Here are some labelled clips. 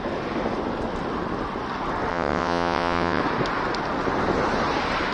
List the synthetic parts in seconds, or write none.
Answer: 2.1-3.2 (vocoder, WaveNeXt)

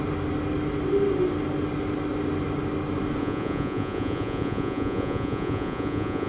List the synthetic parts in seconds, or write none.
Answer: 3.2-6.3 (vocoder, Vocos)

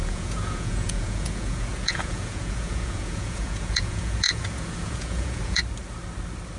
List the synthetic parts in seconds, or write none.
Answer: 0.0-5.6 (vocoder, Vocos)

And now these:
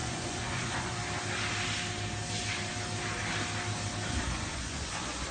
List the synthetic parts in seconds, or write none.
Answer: 0.0-1.0 (vocoder, Vocos); 4.2-5.3